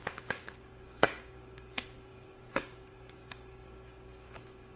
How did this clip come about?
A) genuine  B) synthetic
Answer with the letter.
B